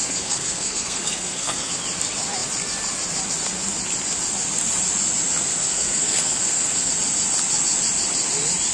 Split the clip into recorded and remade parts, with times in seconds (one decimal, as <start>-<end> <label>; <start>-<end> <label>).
0.0-1.7 remade; 1.7-5.7 recorded; 5.7-6.9 remade; 6.9-8.7 recorded